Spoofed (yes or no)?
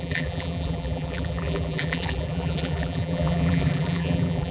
yes